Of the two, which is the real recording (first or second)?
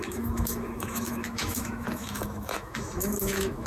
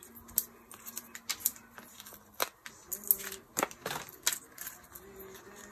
second